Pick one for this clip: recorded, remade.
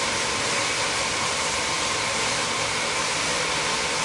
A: recorded